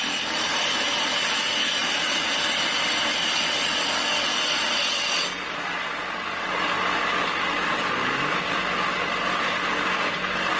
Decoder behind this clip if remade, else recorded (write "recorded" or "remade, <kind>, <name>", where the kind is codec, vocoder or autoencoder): recorded